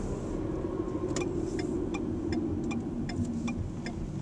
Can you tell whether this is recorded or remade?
recorded